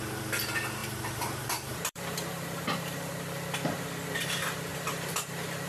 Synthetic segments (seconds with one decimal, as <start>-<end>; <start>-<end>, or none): 0.8-3.1